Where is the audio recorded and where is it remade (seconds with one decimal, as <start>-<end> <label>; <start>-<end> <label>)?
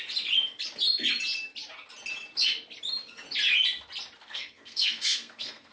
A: 0.0-4.2 recorded; 4.2-5.7 remade